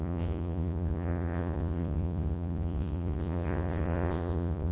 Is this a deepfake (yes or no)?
yes